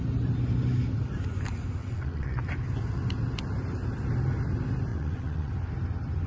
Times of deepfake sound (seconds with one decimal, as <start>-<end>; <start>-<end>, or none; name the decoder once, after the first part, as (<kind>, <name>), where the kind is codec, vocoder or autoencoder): 1.8-2.4 (vocoder, WaveNeXt); 4.9-5.5